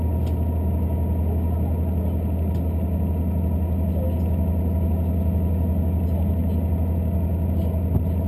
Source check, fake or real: real